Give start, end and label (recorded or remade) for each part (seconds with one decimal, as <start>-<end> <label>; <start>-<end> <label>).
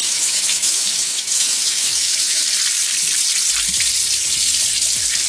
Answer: 0.0-2.4 remade; 2.4-5.3 recorded